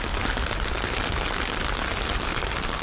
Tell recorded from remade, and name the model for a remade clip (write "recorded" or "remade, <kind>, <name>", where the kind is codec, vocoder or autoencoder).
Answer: recorded